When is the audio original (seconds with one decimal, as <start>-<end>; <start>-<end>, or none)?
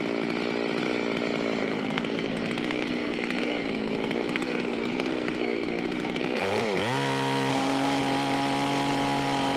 0.0-1.6; 6.6-7.5; 8.0-9.6